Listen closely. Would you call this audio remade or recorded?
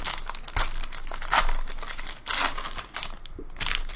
recorded